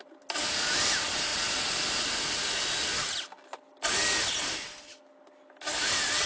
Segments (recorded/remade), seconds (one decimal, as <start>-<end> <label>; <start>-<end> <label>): 0.0-6.3 recorded